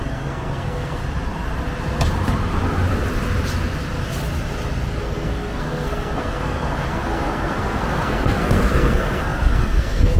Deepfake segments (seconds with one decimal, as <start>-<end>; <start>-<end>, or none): 0.0-1.0; 5.0-10.2